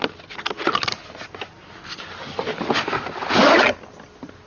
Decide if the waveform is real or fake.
real